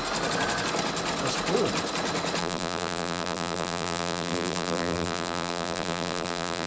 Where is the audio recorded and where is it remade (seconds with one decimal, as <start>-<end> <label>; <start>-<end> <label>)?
0.0-2.4 recorded; 2.4-6.7 remade